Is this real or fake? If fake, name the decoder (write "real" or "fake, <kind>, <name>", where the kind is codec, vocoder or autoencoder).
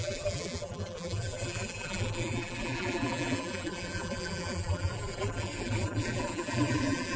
fake, vocoder, BigVGAN v2